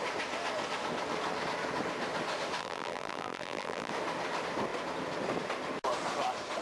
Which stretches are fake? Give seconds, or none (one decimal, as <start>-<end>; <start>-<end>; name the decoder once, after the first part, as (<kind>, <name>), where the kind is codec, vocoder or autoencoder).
2.6-3.9 (vocoder, BigVGAN v2)